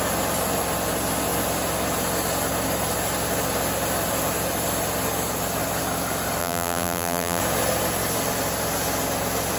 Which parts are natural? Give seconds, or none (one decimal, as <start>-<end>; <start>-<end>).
0.0-6.4; 7.4-9.6